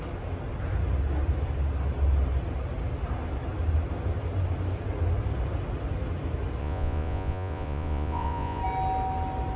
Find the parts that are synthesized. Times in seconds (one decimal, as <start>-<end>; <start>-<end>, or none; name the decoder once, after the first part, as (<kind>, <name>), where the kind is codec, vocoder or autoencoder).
6.6-8.6 (vocoder, Vocos)